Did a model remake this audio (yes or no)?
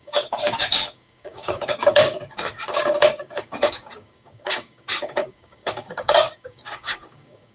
yes